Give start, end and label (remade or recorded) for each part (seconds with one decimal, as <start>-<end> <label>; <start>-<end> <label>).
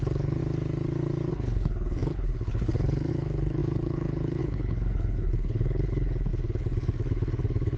0.0-0.4 remade; 0.4-1.3 recorded; 1.3-7.8 remade